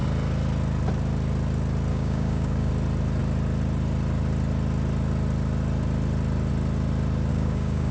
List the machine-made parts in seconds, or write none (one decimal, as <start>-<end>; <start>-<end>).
1.9-2.7; 7.3-7.9